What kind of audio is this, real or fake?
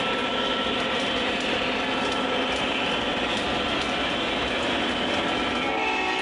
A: real